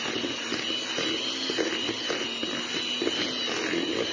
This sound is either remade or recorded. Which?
recorded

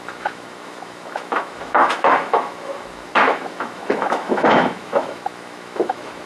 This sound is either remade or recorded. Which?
remade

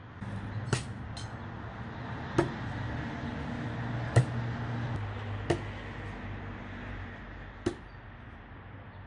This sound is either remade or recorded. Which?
recorded